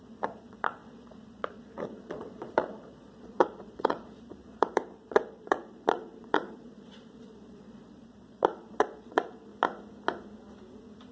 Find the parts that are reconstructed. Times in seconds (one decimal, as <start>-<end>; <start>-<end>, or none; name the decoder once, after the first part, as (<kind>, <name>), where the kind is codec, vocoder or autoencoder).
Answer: 0.0-9.5 (vocoder, Vocos)